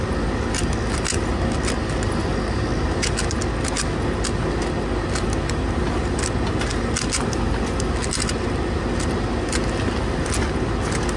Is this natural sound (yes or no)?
yes